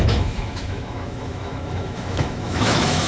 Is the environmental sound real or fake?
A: fake